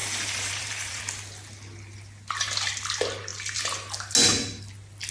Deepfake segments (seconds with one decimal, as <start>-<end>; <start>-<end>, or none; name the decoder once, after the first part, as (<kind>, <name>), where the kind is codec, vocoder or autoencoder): 0.0-1.0 (vocoder, BigVGAN v2)